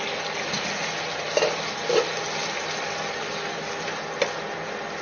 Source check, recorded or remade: recorded